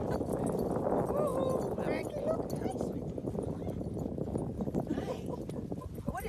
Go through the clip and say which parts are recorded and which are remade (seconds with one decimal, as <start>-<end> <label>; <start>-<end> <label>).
0.0-6.3 recorded

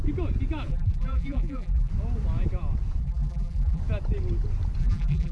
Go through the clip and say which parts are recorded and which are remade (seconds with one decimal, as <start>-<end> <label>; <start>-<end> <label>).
0.0-0.7 recorded; 0.7-1.9 remade; 1.9-3.0 recorded; 3.0-3.8 remade; 3.8-4.8 recorded; 4.8-5.3 remade